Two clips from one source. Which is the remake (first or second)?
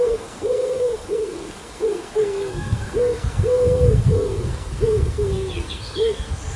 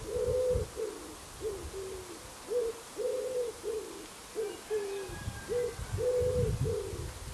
first